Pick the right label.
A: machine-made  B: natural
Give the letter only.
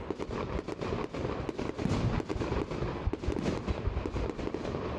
B